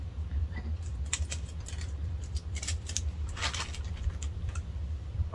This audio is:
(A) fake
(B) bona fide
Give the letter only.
A